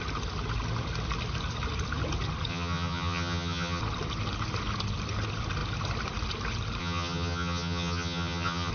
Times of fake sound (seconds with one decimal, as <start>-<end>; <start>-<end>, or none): 2.5-3.8; 6.8-8.7